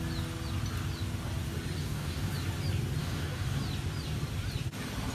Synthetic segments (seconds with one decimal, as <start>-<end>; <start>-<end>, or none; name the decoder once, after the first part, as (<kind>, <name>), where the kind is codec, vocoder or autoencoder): 1.8-2.3 (codec, DAC); 3.0-3.6